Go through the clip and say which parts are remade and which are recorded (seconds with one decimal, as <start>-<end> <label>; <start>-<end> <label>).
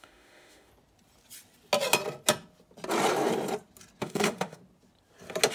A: 0.0-0.7 remade; 0.7-4.0 recorded; 4.0-4.6 remade; 4.6-5.5 recorded